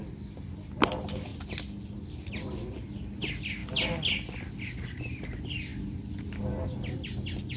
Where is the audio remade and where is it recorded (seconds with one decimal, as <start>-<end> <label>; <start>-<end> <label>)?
0.0-7.6 recorded